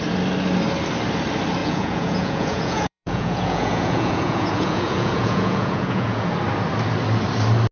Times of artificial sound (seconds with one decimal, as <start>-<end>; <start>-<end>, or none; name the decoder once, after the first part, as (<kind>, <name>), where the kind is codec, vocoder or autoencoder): 1.6-6.2 (vocoder, Vocos)